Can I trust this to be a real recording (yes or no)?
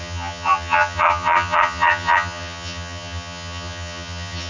no